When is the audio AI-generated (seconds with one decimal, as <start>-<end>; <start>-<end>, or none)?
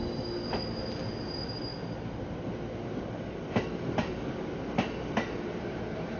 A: none